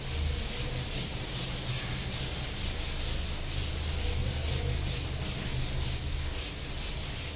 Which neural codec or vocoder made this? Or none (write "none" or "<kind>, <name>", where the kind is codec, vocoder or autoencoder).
none